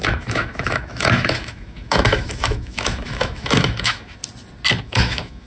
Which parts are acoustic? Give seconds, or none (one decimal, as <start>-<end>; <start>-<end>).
4.2-4.8